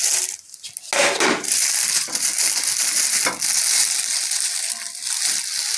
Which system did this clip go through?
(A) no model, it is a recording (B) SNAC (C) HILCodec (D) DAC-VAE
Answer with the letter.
A